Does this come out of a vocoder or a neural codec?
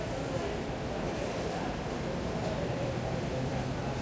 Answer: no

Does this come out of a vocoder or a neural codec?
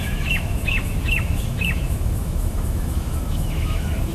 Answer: yes